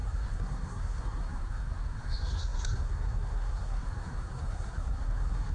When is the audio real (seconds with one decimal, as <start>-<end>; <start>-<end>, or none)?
none